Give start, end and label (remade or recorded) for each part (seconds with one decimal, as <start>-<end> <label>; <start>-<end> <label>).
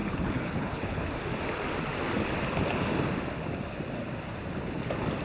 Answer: 0.0-1.1 remade; 1.1-5.2 recorded